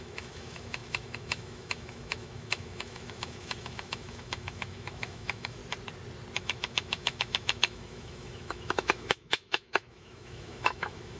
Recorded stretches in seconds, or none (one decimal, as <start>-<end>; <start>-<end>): 5.6-6.4